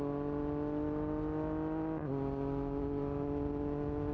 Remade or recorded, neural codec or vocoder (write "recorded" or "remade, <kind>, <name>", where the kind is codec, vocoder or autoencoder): recorded